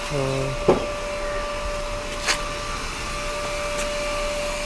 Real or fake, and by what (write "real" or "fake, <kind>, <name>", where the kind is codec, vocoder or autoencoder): real